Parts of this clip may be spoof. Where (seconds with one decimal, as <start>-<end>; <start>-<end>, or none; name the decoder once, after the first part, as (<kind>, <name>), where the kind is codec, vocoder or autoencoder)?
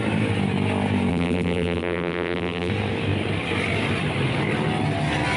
1.1-2.7 (vocoder, BigVGAN v2)